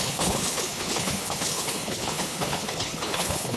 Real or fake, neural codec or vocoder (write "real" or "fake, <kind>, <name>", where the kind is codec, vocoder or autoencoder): fake, codec, HILCodec